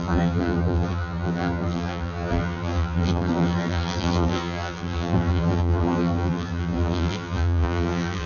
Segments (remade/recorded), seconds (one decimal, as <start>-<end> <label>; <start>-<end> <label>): 0.0-8.3 remade